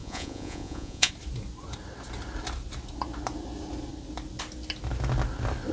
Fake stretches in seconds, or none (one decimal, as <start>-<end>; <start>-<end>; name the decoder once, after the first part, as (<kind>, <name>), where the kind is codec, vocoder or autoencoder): 0.0-1.1 (vocoder, Vocos)